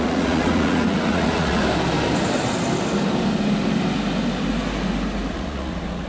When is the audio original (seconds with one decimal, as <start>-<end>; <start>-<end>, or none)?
1.6-5.3